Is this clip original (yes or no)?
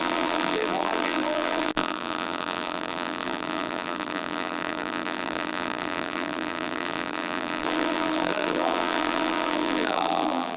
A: no